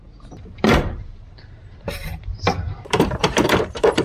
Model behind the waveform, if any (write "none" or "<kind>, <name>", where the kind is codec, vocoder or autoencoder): vocoder, BigVGAN v2